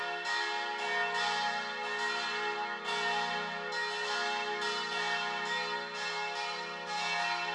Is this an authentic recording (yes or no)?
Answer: yes